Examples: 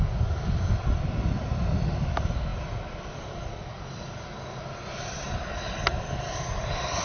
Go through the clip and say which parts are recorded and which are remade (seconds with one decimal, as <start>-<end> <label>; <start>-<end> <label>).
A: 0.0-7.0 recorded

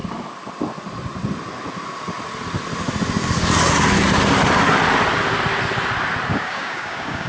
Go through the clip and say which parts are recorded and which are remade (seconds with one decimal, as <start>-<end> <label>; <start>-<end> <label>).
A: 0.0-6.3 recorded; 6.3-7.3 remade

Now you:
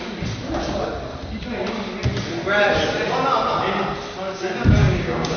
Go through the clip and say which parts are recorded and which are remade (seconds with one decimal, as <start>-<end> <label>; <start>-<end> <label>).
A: 0.0-4.8 recorded; 4.8-5.4 remade